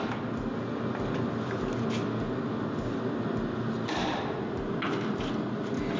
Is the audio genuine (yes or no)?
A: yes